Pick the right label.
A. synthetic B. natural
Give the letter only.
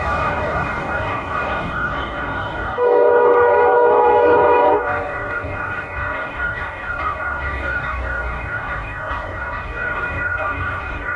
A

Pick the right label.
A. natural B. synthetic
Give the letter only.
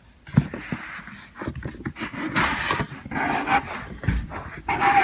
A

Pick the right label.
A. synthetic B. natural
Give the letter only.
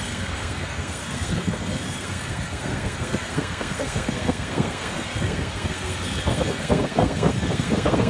A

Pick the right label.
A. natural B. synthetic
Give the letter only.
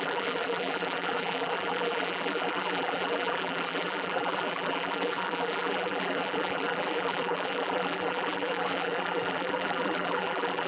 B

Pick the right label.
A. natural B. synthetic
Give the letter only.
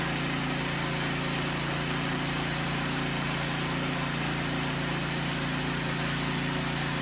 A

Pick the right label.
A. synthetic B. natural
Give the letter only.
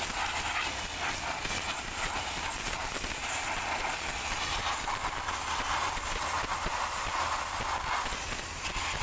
B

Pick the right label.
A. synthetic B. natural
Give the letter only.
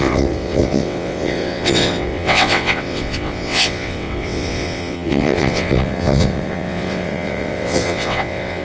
A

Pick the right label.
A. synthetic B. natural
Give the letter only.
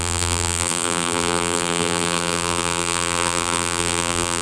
A